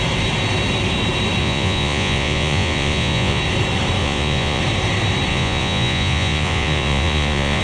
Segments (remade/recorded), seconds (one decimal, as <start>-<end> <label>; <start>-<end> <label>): 0.0-1.4 recorded; 1.4-3.4 remade; 3.4-4.0 recorded; 4.0-4.6 remade; 4.6-5.3 recorded; 5.3-7.6 remade